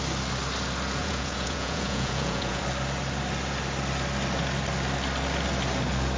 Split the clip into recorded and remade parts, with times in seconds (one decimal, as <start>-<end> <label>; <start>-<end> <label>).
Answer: 0.0-1.0 recorded; 1.0-2.6 remade; 2.6-6.2 recorded